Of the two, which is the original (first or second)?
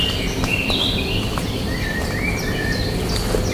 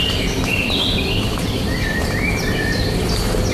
first